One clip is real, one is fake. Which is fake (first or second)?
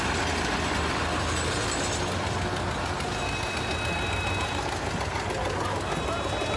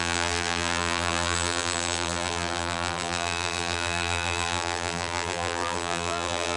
second